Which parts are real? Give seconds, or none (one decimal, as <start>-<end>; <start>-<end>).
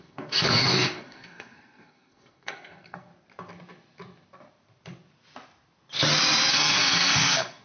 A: 3.1-6.5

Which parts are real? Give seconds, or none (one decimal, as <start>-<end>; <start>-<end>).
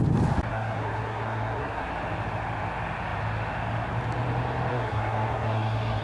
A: 0.0-0.5; 1.9-4.7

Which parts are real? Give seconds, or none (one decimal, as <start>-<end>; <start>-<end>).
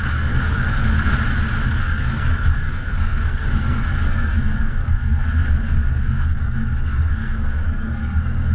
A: 1.1-1.7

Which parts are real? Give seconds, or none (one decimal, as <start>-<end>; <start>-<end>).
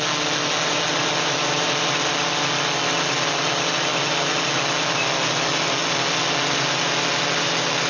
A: 0.0-7.9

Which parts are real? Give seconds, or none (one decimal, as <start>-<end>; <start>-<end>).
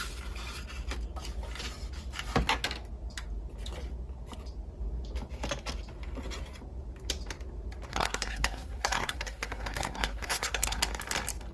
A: 0.0-7.9; 10.8-11.5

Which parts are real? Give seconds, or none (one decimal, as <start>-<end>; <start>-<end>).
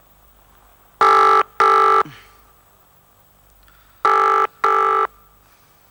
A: 0.0-5.9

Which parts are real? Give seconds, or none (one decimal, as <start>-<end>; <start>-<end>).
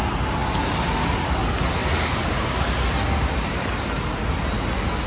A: 0.0-5.1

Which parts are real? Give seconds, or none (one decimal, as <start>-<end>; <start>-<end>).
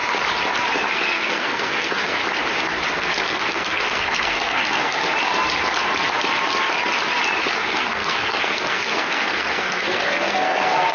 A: 0.0-0.9; 2.2-2.9; 5.0-7.5